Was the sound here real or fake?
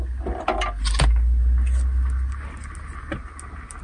real